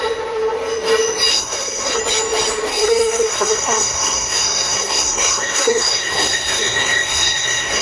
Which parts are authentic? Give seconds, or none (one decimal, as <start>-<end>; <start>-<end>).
0.0-1.3; 2.0-2.7